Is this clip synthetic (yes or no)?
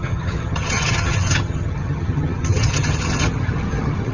yes